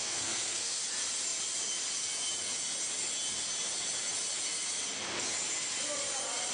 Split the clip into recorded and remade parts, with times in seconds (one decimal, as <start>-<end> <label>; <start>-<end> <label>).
0.0-0.8 remade; 0.8-6.5 recorded